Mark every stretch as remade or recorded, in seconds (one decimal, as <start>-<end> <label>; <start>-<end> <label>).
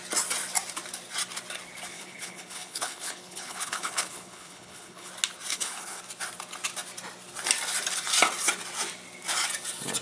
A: 0.0-1.9 recorded; 1.9-5.1 remade; 5.1-5.5 recorded; 5.5-6.0 remade; 6.0-10.0 recorded